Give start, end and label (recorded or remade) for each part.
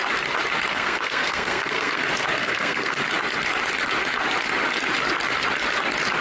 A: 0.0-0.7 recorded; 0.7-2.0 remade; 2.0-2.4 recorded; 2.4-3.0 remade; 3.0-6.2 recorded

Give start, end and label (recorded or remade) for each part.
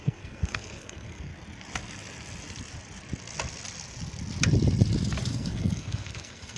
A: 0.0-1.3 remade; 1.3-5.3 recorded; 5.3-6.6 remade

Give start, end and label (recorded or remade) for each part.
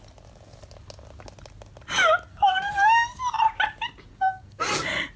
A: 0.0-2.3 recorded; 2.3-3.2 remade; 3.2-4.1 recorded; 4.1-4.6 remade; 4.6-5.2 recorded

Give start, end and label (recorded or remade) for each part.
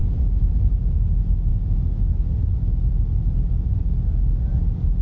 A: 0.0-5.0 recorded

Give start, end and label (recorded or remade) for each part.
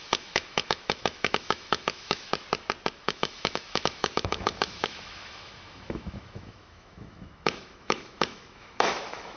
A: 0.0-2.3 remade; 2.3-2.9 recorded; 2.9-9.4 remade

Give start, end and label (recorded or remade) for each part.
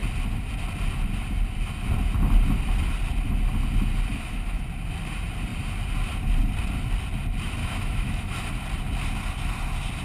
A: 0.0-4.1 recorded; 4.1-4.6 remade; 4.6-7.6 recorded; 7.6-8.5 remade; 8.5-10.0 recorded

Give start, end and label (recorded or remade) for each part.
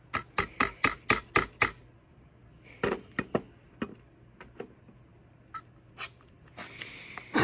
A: 0.0-7.4 recorded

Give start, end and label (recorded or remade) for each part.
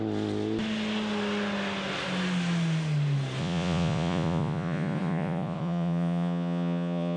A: 0.0-3.4 recorded; 3.4-7.2 remade